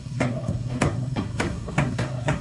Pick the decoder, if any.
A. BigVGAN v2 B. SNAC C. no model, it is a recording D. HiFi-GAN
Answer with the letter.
B